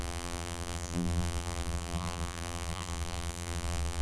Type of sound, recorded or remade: remade